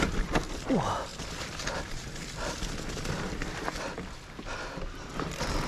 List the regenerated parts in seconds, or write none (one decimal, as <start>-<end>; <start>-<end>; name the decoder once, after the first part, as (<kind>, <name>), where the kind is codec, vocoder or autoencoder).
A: none